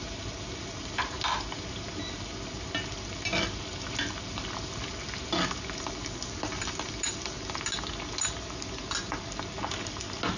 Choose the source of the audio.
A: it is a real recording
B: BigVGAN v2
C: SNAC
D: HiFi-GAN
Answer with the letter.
A